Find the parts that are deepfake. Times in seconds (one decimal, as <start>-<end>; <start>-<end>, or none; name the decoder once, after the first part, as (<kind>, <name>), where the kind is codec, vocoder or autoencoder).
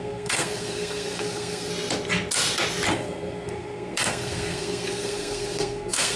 0.0-1.7 (codec, SNAC); 2.9-6.2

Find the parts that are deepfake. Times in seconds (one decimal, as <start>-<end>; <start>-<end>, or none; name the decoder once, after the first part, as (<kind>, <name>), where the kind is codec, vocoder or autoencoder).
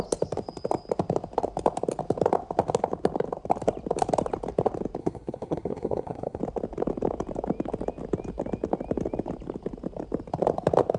5.0-6.4 (codec, SNAC)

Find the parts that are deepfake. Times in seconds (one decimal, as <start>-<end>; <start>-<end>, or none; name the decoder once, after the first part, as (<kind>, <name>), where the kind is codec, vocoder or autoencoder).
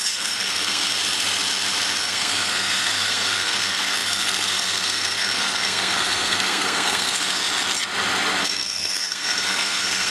0.0-1.0 (codec, SNAC); 2.1-7.4; 8.4-10.1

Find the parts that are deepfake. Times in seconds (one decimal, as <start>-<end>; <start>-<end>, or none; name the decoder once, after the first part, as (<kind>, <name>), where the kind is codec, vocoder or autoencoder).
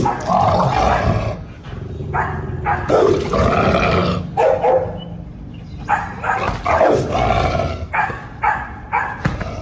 7.7-8.2 (codec, SNAC)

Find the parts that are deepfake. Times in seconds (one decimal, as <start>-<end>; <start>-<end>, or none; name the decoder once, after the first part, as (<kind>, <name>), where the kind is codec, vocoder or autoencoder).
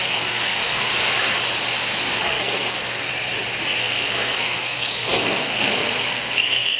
0.0-0.9 (codec, SNAC); 2.2-3.1; 3.8-6.8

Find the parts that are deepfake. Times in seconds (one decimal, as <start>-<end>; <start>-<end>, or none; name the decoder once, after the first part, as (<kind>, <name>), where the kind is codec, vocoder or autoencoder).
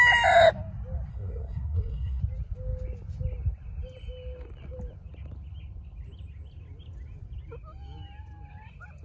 1.1-2.2 (codec, SNAC)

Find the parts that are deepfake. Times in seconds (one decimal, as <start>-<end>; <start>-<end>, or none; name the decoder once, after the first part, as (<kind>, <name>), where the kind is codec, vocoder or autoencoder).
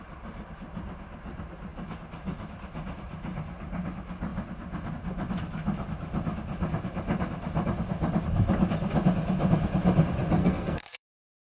10.4-11.1 (codec, SNAC)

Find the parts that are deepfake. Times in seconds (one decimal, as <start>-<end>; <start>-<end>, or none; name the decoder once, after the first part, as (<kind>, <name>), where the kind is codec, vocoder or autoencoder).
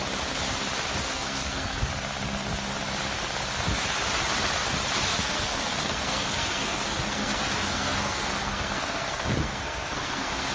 1.0-1.9 (codec, SNAC); 5.1-10.5